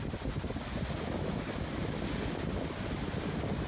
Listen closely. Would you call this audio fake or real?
real